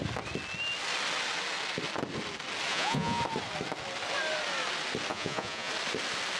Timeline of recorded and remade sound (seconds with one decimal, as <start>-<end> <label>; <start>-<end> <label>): 0.0-2.7 recorded; 2.7-3.2 remade; 3.2-5.1 recorded; 5.1-5.7 remade; 5.7-6.4 recorded